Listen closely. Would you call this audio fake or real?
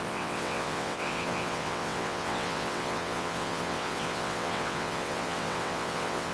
fake